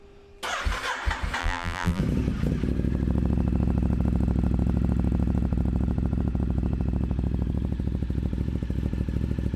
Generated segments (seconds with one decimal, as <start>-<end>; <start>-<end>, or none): 1.4-2.0